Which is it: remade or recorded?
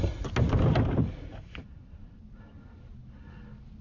recorded